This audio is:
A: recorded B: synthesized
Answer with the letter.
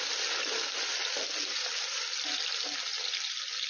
A